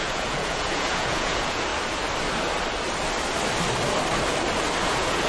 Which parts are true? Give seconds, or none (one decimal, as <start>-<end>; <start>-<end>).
1.7-4.8